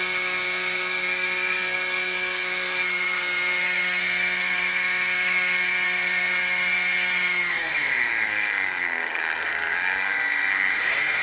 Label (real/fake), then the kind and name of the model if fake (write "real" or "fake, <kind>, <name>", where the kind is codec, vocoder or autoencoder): fake, codec, SNAC